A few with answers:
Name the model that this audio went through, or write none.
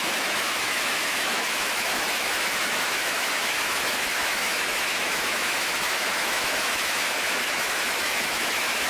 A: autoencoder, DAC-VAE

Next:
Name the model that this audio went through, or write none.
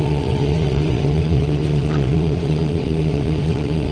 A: vocoder, WaveNeXt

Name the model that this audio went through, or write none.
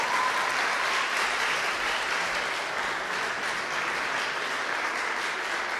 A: none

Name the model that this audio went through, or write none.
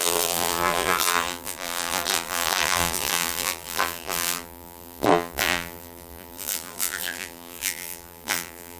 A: vocoder, BigVGAN v2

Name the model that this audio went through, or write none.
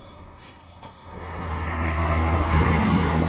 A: codec, SNAC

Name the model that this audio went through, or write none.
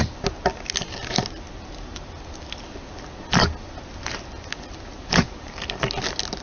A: none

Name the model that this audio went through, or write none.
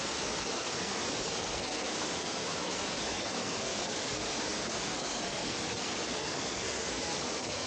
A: codec, SNAC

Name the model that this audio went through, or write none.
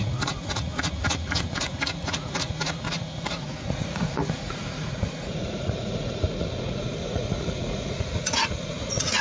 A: vocoder, Vocos